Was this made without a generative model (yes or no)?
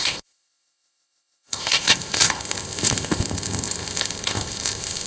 no